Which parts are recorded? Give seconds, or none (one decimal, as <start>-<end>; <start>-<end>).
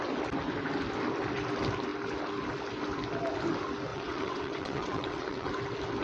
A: 0.0-3.9; 5.5-6.0